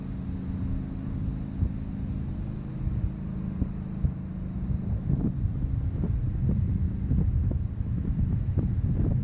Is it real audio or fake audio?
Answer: real